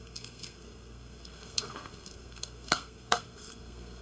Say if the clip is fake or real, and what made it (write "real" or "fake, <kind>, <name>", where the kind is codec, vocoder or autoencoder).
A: fake, codec, SNAC